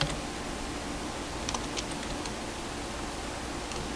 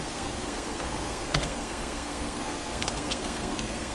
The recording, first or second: first